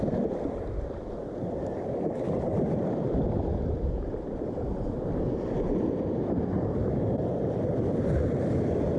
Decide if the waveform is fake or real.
fake